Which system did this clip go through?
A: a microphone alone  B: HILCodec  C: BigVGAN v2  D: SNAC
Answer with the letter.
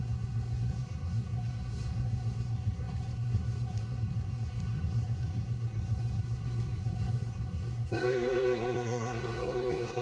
D